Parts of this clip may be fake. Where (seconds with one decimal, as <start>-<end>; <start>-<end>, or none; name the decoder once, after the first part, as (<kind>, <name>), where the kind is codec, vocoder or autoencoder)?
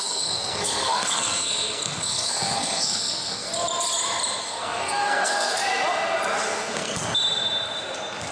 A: 0.0-3.5 (codec, SNAC); 4.4-5.6; 6.4-7.0